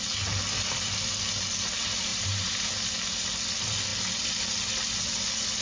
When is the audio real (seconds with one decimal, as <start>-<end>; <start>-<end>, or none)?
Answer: 0.0-2.1; 2.7-5.6